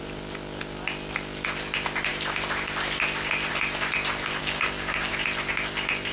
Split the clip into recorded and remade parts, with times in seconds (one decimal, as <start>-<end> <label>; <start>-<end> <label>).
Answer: 0.0-4.4 recorded; 4.4-5.1 remade; 5.1-6.1 recorded